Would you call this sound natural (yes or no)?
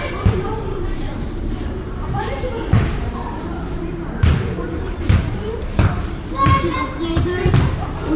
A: no